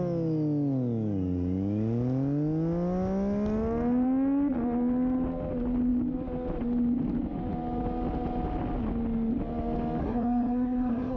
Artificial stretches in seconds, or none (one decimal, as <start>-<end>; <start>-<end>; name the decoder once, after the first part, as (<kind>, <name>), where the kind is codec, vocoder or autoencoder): 10.0-11.2 (codec, SNAC)